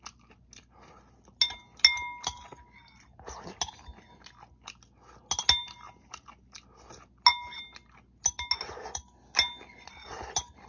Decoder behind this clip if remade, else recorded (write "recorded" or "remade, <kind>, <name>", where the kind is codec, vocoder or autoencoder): recorded